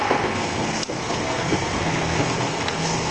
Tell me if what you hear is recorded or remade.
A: remade